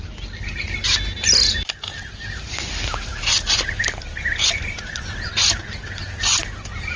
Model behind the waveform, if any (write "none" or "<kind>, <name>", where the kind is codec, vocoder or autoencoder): none